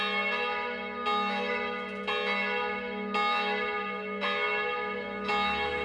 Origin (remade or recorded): recorded